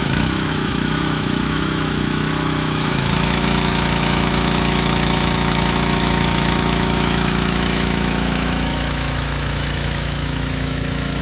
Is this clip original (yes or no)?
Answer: no